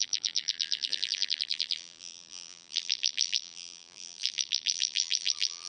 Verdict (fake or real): fake